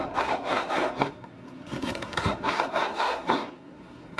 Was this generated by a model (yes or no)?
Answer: yes